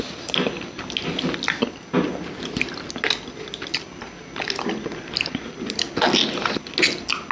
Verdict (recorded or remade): recorded